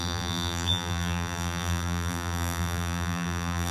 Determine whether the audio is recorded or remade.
remade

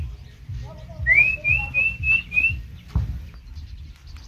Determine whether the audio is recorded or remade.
recorded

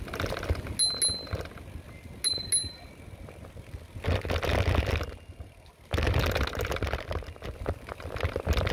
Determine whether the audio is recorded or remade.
recorded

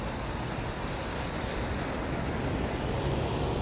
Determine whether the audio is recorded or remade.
recorded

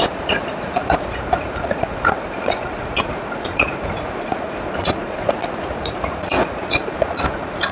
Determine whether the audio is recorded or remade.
remade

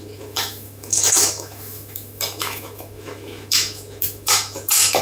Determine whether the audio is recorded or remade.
remade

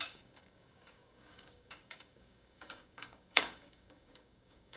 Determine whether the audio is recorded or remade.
remade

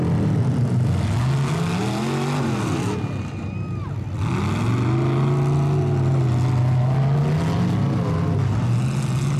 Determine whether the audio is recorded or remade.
recorded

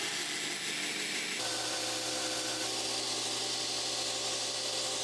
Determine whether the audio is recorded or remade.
recorded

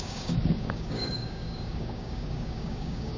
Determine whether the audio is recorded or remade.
remade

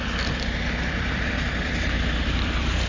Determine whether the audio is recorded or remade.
remade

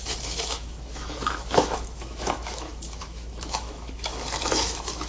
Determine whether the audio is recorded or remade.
remade